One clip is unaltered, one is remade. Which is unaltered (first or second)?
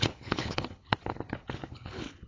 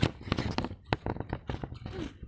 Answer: second